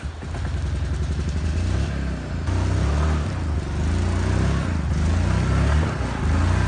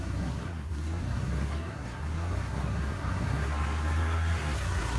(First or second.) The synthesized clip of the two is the second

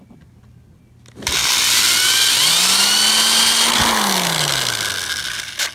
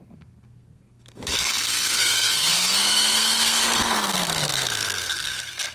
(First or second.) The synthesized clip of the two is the second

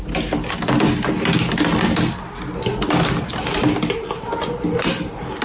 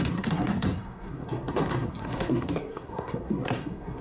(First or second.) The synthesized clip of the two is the second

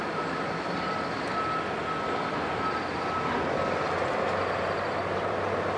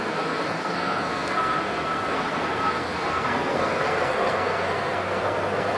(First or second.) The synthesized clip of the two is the second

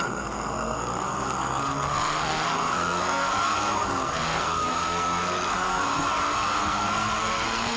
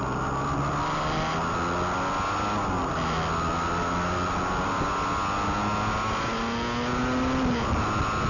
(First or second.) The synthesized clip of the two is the first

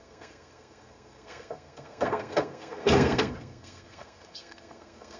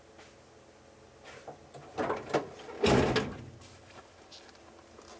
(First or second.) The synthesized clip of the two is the first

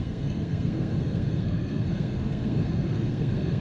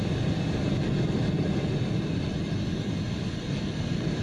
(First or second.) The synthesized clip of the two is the first